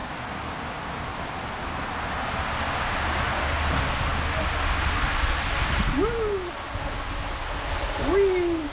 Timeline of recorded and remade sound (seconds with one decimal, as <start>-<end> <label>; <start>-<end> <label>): 0.0-1.8 remade; 1.8-8.7 recorded